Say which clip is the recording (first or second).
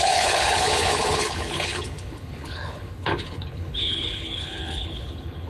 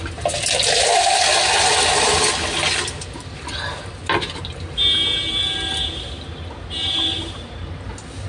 second